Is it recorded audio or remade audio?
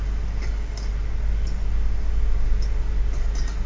recorded